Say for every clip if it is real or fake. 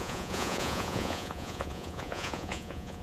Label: fake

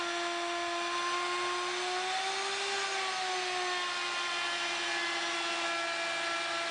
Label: real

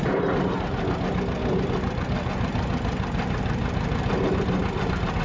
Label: real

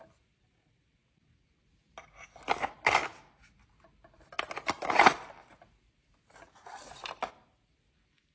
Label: real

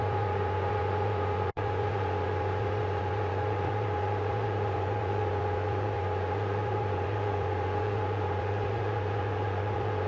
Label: fake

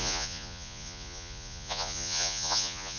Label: fake